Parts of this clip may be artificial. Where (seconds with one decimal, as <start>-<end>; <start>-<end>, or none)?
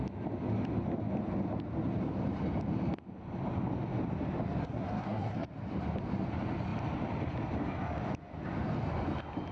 4.6-5.5